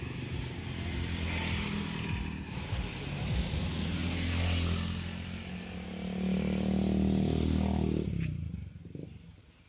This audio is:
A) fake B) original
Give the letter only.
B